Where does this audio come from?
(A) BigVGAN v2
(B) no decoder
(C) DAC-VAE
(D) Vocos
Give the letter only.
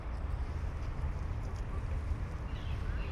B